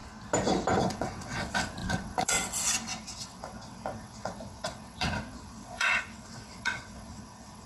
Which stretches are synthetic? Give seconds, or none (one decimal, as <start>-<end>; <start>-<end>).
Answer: 0.8-7.7